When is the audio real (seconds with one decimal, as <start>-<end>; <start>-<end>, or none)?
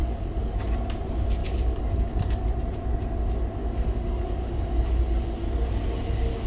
0.6-1.4; 2.5-3.6; 4.4-6.5